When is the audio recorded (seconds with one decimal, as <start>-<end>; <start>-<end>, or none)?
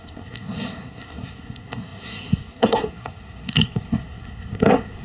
none